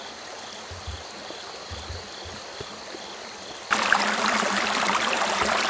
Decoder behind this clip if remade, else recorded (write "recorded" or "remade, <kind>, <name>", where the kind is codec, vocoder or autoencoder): recorded